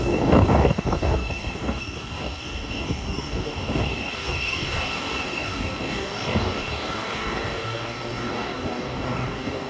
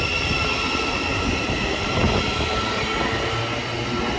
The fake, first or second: first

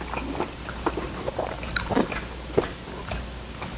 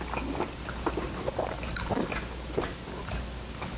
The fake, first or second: first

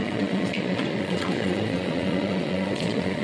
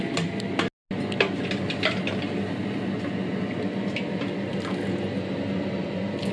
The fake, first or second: first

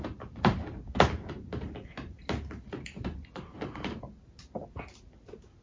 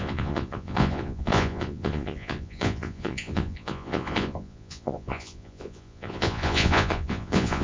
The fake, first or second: second